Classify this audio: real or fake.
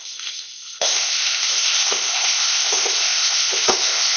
fake